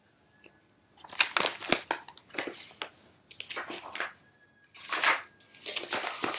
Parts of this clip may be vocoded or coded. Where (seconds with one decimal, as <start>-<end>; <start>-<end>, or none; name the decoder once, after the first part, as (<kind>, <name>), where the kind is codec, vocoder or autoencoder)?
none